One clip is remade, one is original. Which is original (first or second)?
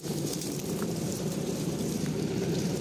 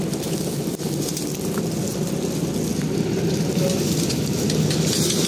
second